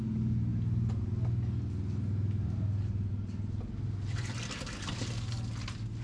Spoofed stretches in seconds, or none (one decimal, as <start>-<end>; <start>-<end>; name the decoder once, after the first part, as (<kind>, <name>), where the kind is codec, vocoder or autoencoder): none